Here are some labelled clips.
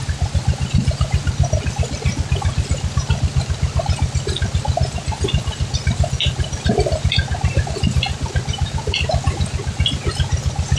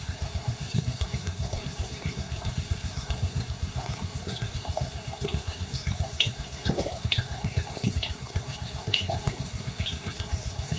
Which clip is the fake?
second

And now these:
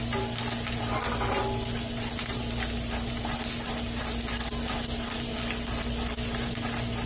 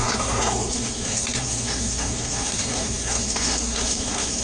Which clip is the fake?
second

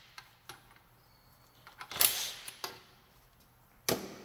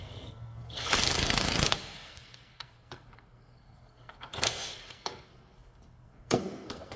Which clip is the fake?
second